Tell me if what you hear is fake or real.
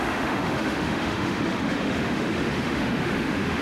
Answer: fake